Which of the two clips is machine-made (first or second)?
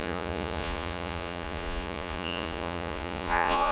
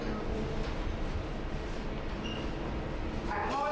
first